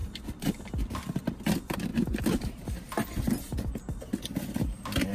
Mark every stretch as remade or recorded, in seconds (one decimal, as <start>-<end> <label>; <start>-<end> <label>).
0.0-5.1 recorded